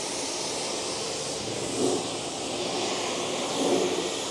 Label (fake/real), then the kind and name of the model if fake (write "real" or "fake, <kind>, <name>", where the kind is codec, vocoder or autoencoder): real